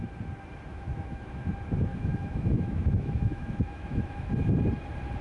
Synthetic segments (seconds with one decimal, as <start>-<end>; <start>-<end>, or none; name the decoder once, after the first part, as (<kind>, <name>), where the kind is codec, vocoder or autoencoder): 0.7-1.4 (autoencoder, DAC-VAE); 1.9-4.3

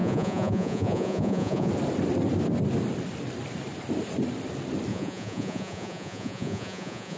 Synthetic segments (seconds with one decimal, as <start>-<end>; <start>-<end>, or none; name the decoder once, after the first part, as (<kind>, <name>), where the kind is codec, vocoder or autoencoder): 0.0-1.7 (vocoder, Vocos); 4.9-7.2

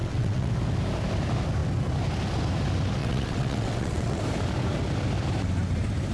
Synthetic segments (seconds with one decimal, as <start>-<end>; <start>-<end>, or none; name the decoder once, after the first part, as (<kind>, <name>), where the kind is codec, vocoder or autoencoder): 0.0-0.5 (vocoder, WaveNeXt); 3.0-4.2

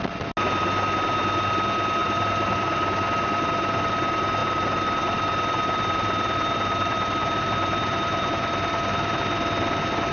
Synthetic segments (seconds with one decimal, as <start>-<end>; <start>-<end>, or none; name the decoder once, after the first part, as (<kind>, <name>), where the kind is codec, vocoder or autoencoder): 2.0-3.9 (vocoder, BigVGAN v2); 4.4-9.2

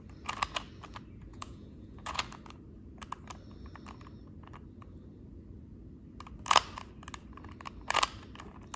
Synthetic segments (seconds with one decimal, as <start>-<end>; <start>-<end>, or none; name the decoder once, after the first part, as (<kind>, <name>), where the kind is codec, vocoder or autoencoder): 1.3-2.2 (vocoder, Vocos)

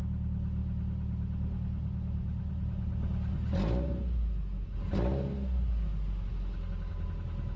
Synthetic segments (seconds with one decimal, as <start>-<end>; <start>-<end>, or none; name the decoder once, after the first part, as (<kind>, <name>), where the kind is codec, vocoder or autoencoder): none